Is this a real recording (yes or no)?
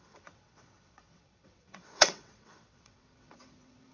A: no